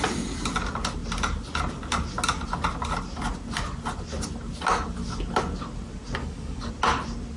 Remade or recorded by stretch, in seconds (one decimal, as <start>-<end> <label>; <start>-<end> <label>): 0.0-6.2 recorded; 6.2-6.7 remade; 6.7-7.4 recorded